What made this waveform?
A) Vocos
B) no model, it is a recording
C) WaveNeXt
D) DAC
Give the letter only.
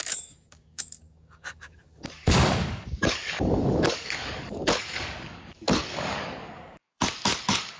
D